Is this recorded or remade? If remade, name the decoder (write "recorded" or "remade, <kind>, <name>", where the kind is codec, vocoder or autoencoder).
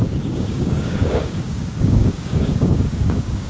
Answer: remade, codec, DAC